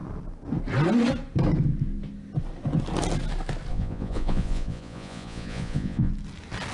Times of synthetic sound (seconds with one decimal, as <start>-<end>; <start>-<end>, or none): 3.7-6.1